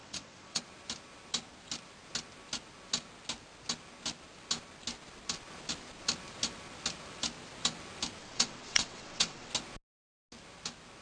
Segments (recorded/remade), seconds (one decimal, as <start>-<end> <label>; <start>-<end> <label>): 0.0-0.6 remade; 0.6-8.2 recorded; 8.2-9.5 remade; 9.5-11.0 recorded